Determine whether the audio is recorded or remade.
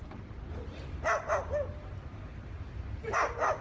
recorded